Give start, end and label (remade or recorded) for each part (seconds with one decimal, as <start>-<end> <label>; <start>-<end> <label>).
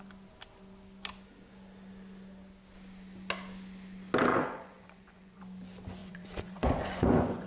0.0-4.3 recorded; 4.3-5.4 remade; 5.4-6.0 recorded; 6.0-7.5 remade